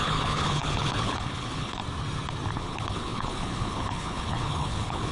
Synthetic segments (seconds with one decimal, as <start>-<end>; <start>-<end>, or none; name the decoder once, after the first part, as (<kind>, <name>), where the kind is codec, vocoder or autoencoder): 0.0-1.8 (codec, HILCodec); 2.5-5.1